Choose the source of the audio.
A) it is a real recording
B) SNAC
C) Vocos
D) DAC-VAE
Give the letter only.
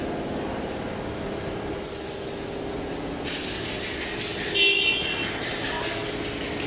A